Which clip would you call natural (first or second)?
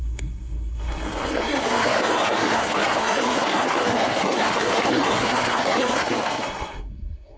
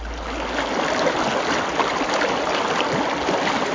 second